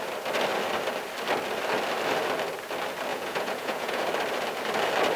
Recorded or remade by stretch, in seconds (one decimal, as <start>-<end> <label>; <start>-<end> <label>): 0.0-3.1 recorded; 3.1-4.0 remade; 4.0-5.2 recorded